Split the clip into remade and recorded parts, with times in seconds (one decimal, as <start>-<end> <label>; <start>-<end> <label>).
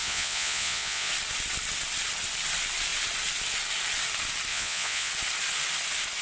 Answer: 0.0-1.1 remade; 1.1-4.5 recorded; 4.5-5.1 remade; 5.1-6.2 recorded